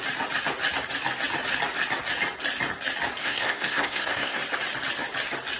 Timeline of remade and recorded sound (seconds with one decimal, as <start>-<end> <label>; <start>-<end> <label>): 0.0-3.2 recorded; 3.2-4.4 remade; 4.4-5.6 recorded